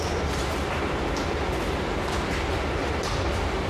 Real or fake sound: real